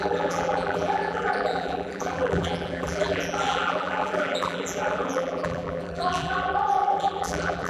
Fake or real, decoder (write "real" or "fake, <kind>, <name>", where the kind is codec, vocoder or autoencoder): fake, vocoder, BigVGAN v2